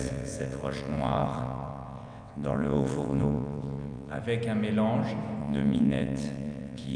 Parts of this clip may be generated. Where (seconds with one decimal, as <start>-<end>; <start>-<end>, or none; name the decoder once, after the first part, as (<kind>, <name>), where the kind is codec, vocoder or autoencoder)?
0.0-4.2 (vocoder, WaveNeXt); 5.4-7.0